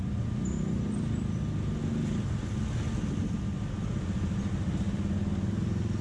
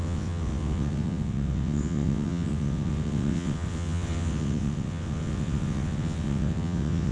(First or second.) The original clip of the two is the first